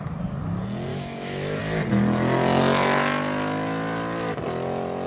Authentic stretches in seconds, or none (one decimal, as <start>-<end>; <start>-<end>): 0.0-0.9; 1.6-5.1